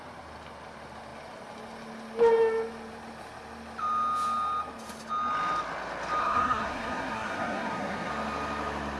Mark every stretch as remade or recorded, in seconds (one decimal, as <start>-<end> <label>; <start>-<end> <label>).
0.0-6.2 recorded; 6.2-8.1 remade; 8.1-9.0 recorded